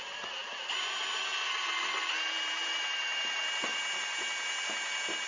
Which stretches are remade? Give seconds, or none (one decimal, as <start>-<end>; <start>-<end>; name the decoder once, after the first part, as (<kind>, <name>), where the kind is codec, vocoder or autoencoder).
none